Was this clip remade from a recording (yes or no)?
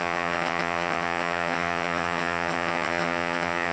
yes